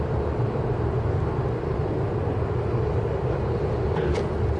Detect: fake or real fake